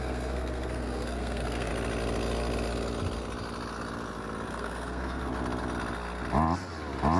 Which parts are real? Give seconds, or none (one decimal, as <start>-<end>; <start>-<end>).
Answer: 1.7-4.5; 5.3-7.2